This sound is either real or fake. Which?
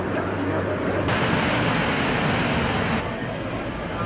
real